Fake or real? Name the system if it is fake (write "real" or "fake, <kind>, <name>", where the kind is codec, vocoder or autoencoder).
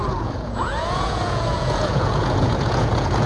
fake, vocoder, Vocos